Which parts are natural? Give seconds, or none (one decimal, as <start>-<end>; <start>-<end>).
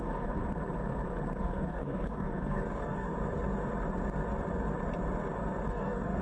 0.4-1.4; 3.1-5.7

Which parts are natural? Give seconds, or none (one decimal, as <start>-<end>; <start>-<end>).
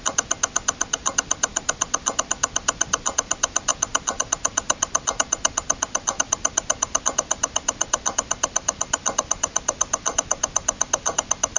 0.0-11.6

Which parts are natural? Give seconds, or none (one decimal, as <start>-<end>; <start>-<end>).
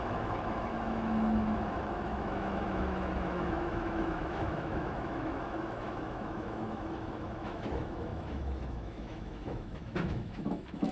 none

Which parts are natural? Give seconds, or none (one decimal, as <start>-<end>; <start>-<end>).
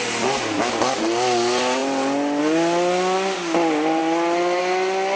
0.0-5.2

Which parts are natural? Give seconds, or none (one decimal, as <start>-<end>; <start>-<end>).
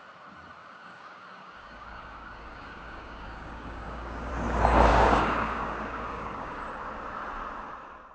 0.0-0.6; 4.3-4.9; 6.6-8.1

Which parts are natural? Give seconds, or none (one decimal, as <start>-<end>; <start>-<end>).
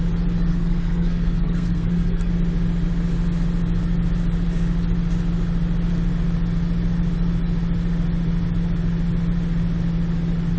0.0-0.5; 2.3-10.6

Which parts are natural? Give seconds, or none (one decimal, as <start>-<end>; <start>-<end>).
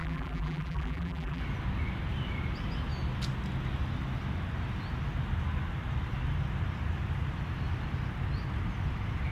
1.4-9.3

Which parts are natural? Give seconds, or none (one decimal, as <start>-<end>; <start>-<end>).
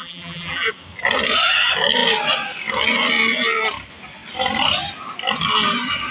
0.7-6.1